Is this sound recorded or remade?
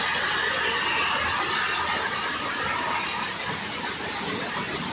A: recorded